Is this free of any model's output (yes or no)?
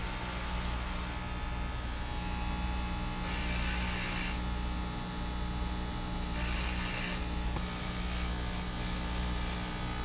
yes